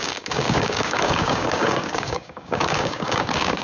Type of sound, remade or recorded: remade